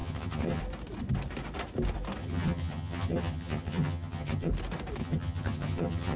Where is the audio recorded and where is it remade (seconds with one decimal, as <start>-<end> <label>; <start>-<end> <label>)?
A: 0.0-0.6 remade; 0.6-2.2 recorded; 2.2-4.5 remade; 4.5-5.0 recorded; 5.0-6.2 remade